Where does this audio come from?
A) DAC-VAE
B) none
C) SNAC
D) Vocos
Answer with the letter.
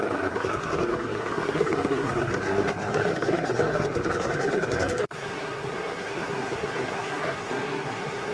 C